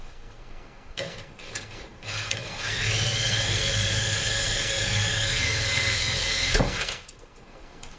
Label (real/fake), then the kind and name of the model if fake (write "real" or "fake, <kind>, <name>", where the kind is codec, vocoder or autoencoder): fake, codec, SNAC